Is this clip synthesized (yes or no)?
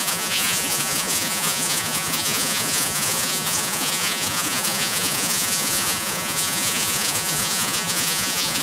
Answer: yes